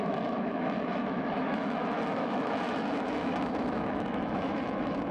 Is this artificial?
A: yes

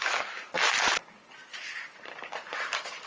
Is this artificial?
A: no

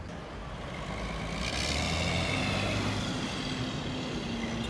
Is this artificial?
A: no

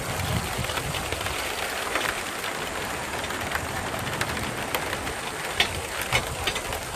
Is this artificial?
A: no